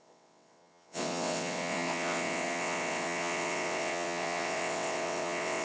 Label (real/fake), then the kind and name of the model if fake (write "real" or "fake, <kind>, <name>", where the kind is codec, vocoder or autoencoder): fake, vocoder, WaveNeXt